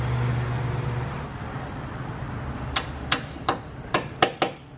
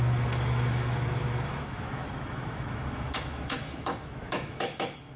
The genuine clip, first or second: first